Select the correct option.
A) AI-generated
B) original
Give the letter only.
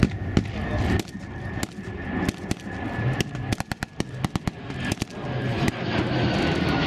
B